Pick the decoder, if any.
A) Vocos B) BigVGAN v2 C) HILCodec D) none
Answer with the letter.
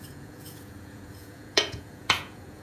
A